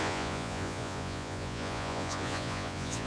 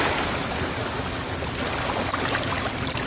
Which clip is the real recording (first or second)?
second